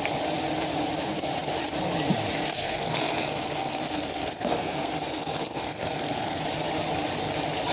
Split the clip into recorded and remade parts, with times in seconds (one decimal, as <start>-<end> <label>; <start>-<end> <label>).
0.0-2.5 recorded; 2.5-6.4 remade; 6.4-7.7 recorded